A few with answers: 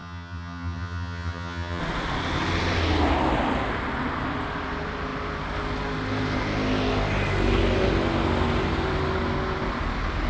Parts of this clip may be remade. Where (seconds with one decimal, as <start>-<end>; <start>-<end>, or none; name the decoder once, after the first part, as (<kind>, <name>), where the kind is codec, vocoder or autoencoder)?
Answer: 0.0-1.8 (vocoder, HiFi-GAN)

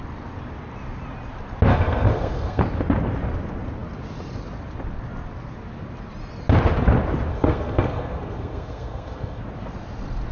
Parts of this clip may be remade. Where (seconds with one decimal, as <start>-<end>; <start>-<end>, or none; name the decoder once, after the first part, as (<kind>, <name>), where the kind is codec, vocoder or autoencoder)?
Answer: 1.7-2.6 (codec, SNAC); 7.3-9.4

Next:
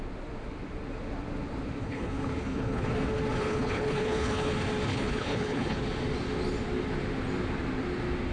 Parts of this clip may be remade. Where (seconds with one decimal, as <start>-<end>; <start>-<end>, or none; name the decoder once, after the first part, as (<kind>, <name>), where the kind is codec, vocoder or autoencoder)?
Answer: 1.8-2.9 (codec, HILCodec); 3.4-4.5; 4.9-5.8

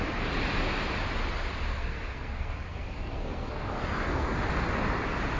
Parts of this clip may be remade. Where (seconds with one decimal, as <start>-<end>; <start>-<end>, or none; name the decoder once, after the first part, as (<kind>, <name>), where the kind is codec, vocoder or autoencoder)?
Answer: 1.7-4.5 (codec, SNAC)